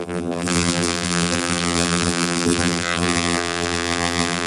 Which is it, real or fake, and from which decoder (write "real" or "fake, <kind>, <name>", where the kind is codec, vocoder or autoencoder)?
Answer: fake, vocoder, BigVGAN v2